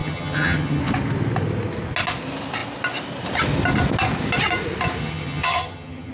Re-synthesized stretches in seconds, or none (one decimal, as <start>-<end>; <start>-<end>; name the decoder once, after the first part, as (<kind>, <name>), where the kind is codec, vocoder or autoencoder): 0.0-0.8 (vocoder, HiFi-GAN); 5.0-6.1